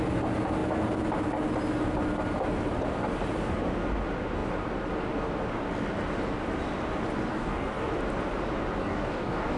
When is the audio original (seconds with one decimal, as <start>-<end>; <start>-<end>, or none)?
0.0-7.3; 7.9-8.8